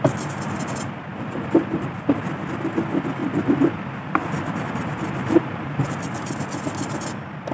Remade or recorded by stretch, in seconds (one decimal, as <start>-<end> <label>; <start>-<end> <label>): 0.0-3.2 recorded; 3.2-5.8 remade; 5.8-7.5 recorded